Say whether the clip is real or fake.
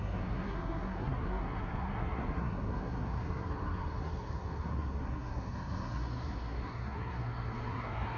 fake